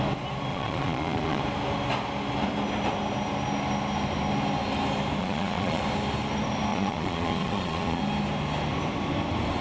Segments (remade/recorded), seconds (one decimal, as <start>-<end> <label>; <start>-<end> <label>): 0.0-0.5 recorded; 0.5-1.4 remade; 1.4-5.2 recorded; 5.2-5.8 remade; 5.8-6.7 recorded; 6.7-8.0 remade; 8.0-9.6 recorded